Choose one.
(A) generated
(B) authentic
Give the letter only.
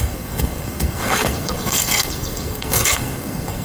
A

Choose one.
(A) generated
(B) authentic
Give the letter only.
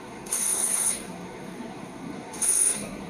A